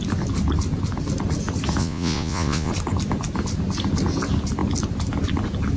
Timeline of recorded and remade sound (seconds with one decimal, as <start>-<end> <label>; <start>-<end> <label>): 0.0-1.8 recorded; 1.8-2.7 remade; 2.7-5.8 recorded